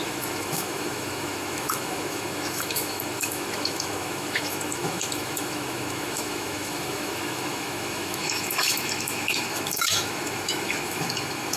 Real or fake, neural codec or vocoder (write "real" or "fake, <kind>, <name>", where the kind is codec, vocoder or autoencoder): fake, autoencoder, DAC-VAE